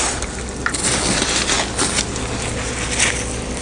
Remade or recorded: recorded